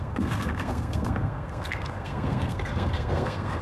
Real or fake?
fake